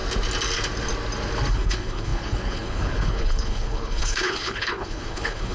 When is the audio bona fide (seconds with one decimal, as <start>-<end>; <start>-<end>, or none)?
0.0-1.5